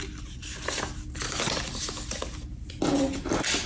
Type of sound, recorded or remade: recorded